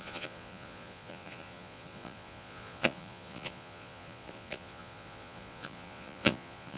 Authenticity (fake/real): fake